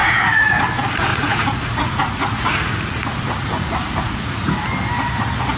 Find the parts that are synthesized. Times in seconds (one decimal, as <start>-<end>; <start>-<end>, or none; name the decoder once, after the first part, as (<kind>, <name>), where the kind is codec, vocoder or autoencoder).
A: 0.0-0.6 (vocoder, Vocos); 1.1-4.5